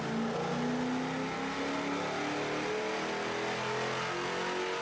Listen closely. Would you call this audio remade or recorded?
recorded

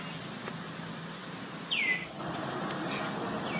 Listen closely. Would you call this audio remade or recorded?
recorded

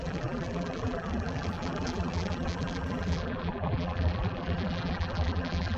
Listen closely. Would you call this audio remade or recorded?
remade